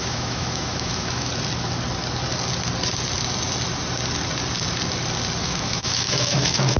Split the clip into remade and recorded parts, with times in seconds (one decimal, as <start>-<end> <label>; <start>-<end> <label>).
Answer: 0.0-1.3 remade; 1.3-5.4 recorded; 5.4-6.8 remade